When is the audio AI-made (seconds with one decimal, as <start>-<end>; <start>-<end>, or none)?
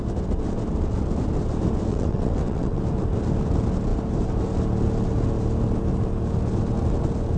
1.9-2.8